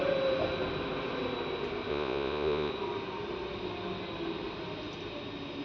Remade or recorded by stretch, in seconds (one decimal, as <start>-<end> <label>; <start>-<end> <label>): 0.0-1.9 recorded; 1.9-2.7 remade; 2.7-5.6 recorded